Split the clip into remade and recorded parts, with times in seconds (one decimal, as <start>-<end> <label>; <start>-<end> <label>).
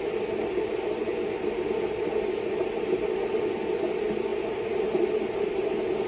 0.0-6.1 recorded